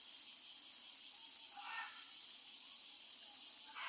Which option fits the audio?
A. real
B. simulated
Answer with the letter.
A